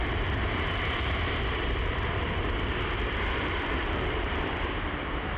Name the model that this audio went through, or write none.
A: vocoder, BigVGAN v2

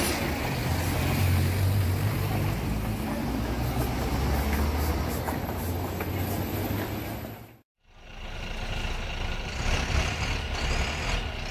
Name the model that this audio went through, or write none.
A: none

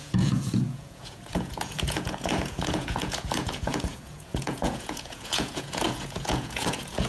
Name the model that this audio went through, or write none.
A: vocoder, Vocos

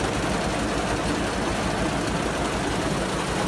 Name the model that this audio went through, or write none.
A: none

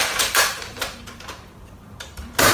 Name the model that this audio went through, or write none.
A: vocoder, BigVGAN v2